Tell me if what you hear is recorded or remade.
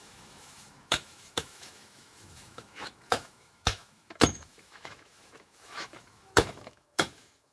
remade